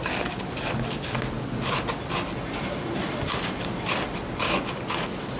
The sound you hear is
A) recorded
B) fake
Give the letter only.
A